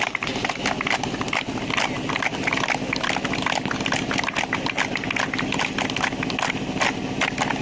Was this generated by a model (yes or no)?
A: no